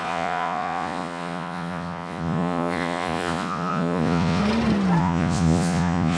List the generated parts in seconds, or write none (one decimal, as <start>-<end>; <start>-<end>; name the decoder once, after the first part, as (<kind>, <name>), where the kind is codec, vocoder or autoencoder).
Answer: 0.0-4.4 (vocoder, Vocos); 5.0-6.2